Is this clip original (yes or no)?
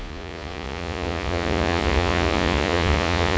no